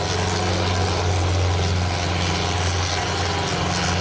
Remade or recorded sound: recorded